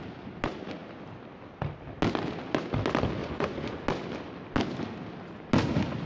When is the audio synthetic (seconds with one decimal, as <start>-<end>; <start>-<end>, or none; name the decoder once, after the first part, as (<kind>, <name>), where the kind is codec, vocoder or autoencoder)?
3.2-3.8 (vocoder, Vocos)